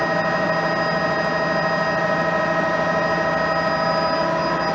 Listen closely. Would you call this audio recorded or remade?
recorded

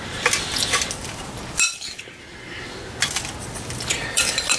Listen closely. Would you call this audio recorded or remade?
recorded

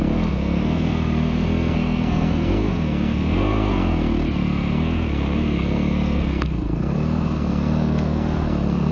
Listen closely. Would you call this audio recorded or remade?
remade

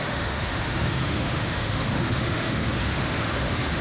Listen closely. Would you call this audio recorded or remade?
remade